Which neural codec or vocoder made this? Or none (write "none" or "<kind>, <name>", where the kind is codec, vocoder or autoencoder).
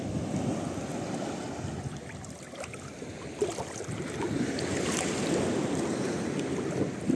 none